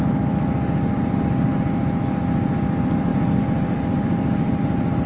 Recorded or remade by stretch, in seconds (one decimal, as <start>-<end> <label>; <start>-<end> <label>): 0.0-3.1 recorded; 3.1-4.6 remade; 4.6-5.1 recorded